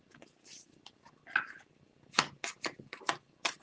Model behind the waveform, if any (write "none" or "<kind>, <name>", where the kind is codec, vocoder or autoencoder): none